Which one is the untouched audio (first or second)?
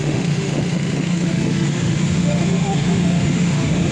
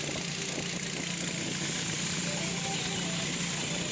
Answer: second